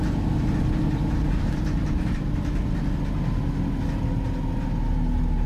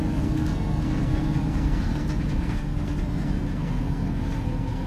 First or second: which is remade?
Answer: second